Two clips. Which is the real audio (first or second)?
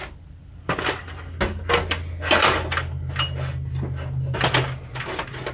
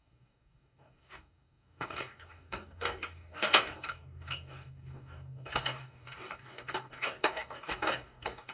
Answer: first